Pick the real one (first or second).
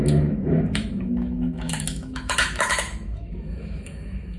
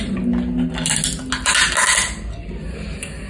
second